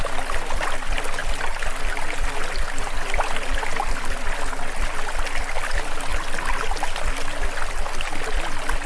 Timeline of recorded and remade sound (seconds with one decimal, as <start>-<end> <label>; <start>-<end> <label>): 0.0-8.9 recorded